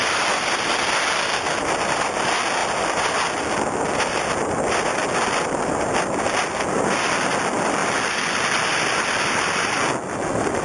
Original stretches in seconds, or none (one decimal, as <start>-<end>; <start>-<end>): 0.0-10.6